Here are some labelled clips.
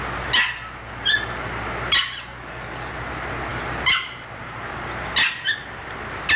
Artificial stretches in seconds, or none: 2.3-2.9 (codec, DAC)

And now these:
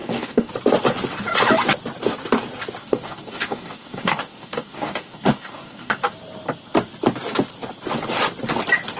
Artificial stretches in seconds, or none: 0.0-0.5 (codec, DAC); 2.8-6.0

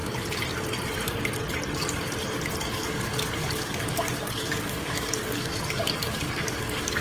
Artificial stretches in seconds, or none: 2.7-7.0 (codec, DAC)

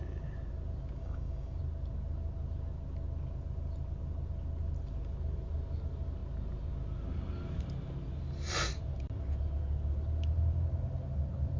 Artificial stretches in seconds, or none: 1.0-1.6 (codec, DAC)

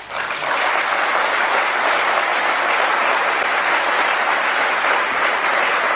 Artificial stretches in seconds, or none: none

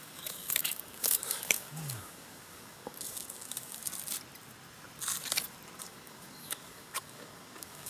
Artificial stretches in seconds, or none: 0.0-3.8 (codec, DAC); 5.8-7.9

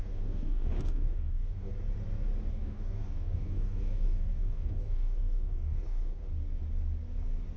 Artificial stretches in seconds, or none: 0.0-1.7 (codec, DAC); 2.5-6.3

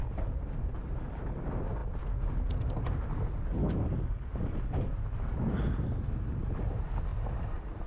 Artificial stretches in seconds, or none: 3.6-4.9 (codec, DAC)